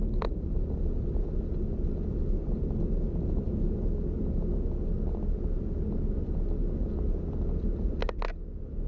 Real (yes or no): yes